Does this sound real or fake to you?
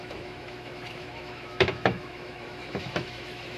fake